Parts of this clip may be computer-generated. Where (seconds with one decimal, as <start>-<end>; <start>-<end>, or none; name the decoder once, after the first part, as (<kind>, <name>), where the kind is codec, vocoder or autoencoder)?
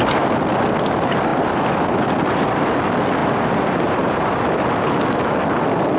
3.2-4.4 (vocoder, BigVGAN v2)